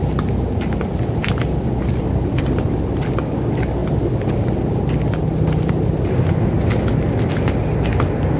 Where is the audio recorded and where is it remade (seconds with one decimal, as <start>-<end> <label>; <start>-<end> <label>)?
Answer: 0.0-8.4 recorded